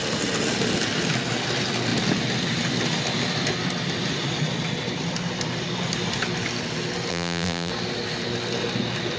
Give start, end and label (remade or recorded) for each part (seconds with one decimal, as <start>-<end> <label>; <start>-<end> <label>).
0.0-7.1 recorded; 7.1-7.7 remade; 7.7-9.2 recorded